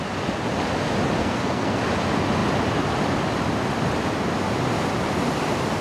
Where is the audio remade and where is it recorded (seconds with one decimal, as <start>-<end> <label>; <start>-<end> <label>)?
0.0-1.2 recorded; 1.2-1.8 remade; 1.8-5.8 recorded